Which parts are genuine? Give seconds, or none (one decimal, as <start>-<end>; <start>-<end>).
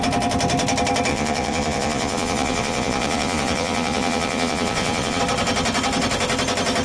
0.0-1.1; 5.2-6.8